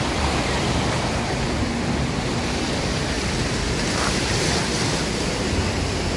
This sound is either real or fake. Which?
fake